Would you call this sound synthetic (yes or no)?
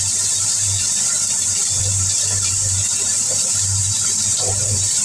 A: yes